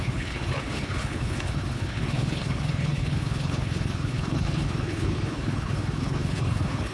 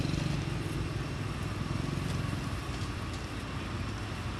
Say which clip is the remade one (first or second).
first